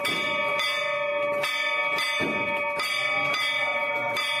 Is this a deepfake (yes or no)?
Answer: no